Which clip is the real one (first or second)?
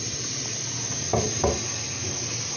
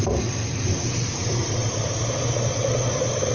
first